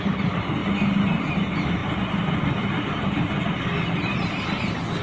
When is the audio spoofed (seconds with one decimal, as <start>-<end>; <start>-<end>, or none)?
none